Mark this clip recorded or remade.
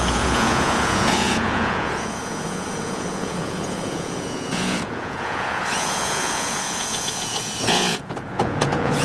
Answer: remade